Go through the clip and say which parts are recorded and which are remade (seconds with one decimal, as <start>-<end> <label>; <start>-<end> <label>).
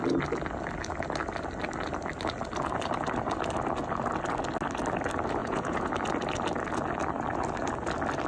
0.0-5.4 recorded; 5.4-5.9 remade; 5.9-8.3 recorded